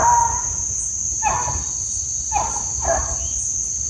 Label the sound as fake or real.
real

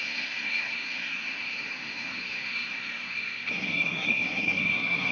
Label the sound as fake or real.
fake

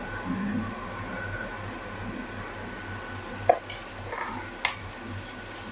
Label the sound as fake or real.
real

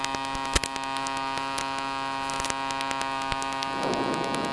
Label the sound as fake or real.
real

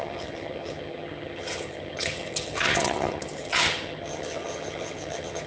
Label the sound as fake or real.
fake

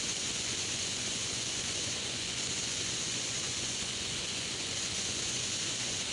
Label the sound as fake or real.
fake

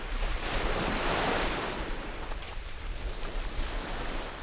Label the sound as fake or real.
real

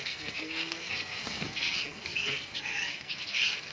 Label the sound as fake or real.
fake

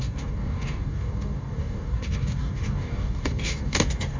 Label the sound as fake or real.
fake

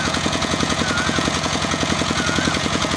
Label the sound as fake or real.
fake